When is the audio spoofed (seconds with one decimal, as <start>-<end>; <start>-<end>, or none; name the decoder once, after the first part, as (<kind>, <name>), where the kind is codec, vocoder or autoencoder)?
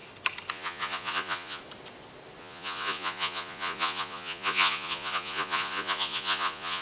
0.5-1.6 (vocoder, Vocos); 2.4-6.8